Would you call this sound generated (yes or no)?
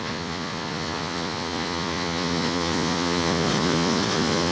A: yes